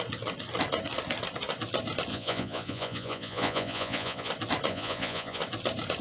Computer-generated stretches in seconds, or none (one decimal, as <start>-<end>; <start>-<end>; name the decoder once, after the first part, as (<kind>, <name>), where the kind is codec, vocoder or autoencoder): 2.1-4.3 (vocoder, Vocos); 4.7-5.4